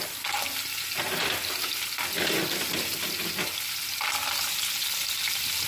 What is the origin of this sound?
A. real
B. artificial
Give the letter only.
A